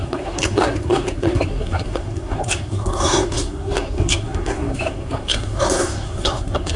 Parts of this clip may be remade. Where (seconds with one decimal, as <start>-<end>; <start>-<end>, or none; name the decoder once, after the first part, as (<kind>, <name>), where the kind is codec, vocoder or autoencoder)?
0.0-6.8 (codec, SNAC)